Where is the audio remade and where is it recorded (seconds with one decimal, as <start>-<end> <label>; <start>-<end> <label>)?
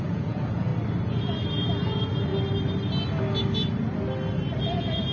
0.0-0.7 remade; 0.7-1.5 recorded; 1.5-2.3 remade; 2.3-4.6 recorded; 4.6-5.1 remade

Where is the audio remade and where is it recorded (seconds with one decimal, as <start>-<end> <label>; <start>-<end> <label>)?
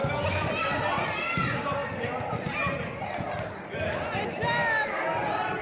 0.0-5.6 recorded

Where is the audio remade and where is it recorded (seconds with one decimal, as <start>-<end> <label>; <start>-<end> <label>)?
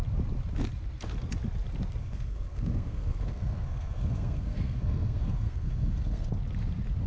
0.0-2.0 recorded; 2.0-6.3 remade; 6.3-7.1 recorded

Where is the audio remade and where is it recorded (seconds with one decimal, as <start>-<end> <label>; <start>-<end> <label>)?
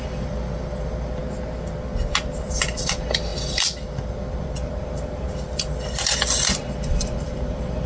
0.0-1.2 remade; 1.2-2.5 recorded; 2.5-7.9 remade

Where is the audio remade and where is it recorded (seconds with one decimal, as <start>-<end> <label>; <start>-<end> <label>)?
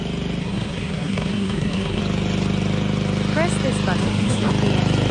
0.0-0.4 recorded; 0.4-2.0 remade; 2.0-4.0 recorded; 4.0-4.5 remade; 4.5-5.1 recorded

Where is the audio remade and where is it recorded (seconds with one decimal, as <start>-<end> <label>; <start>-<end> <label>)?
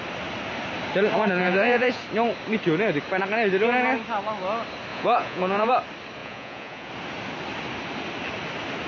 0.0-1.4 recorded; 1.4-2.0 remade; 2.0-4.9 recorded; 4.9-5.7 remade; 5.7-6.2 recorded; 6.2-6.9 remade; 6.9-8.9 recorded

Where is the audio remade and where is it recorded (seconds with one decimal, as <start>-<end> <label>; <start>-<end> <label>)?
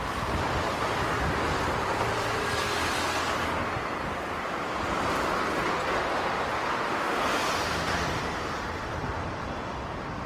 0.0-6.7 recorded; 6.7-7.2 remade; 7.2-10.3 recorded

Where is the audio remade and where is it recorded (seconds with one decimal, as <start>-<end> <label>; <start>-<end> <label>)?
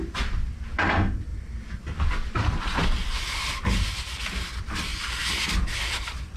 0.0-6.4 recorded